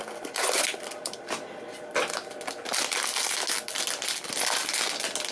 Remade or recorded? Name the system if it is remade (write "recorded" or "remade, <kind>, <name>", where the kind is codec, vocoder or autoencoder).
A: recorded